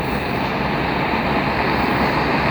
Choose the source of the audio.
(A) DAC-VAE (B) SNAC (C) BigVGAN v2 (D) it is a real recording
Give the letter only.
D